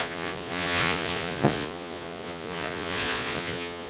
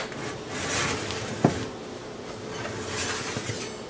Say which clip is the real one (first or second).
second